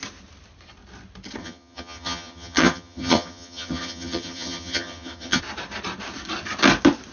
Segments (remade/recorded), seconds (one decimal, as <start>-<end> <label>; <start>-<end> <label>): 0.0-1.4 recorded; 1.4-5.4 remade; 5.4-7.1 recorded